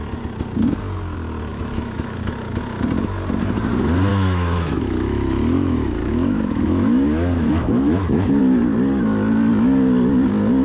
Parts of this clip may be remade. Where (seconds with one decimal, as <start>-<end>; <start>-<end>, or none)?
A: 1.5-2.2; 4.1-8.4